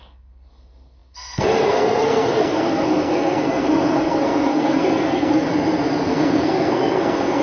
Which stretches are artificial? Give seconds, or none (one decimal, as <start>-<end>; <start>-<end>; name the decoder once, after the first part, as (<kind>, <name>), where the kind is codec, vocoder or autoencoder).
0.0-5.5 (codec, SNAC); 6.1-7.4